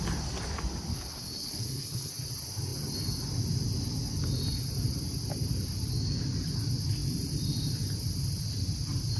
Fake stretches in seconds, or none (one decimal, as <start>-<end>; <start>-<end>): 0.9-2.1